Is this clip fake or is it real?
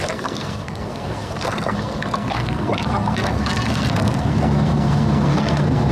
fake